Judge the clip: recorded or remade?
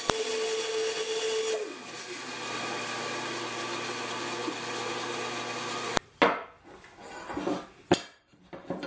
recorded